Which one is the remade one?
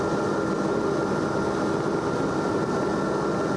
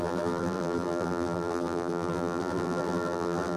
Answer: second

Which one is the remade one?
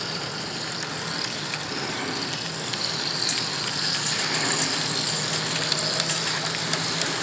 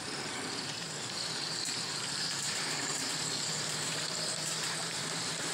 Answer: second